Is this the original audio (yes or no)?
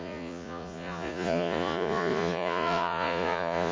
no